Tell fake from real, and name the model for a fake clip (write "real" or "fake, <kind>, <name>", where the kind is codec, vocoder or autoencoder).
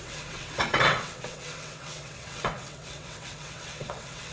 fake, vocoder, WaveNeXt